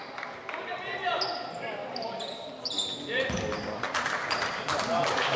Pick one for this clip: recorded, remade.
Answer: remade